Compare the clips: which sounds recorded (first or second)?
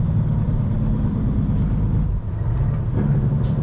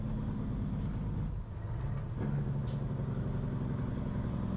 second